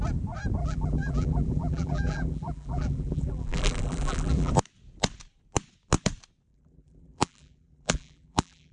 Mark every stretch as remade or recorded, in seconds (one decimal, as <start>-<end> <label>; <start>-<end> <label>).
0.0-0.6 recorded; 0.6-4.5 remade; 4.5-6.5 recorded; 6.5-8.7 remade